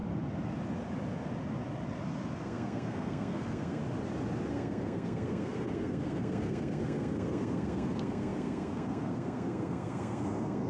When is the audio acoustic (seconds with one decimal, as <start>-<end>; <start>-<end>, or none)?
0.0-2.4; 3.8-4.5

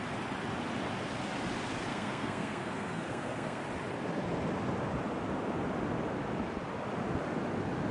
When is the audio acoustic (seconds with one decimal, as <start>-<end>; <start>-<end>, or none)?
0.0-1.9; 3.6-7.9

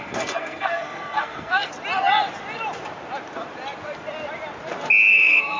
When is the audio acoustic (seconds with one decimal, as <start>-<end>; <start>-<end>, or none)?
1.7-5.1

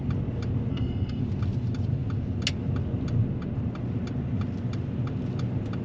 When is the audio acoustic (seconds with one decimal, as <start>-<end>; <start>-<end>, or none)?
0.0-0.7; 1.2-5.8